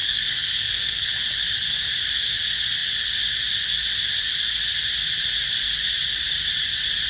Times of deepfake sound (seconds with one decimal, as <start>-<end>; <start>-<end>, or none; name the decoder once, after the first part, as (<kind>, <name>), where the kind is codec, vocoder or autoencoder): 0.0-1.1 (codec, SNAC)